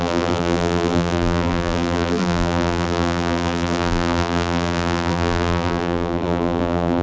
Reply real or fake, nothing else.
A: fake